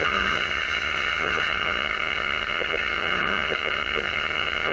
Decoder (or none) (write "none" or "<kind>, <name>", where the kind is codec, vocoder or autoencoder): vocoder, HiFi-GAN